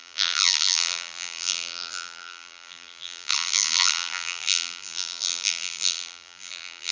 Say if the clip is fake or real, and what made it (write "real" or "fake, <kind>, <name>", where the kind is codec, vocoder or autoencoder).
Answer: fake, vocoder, BigVGAN v2